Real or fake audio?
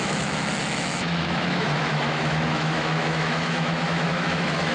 fake